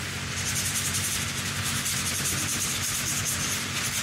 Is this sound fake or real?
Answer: fake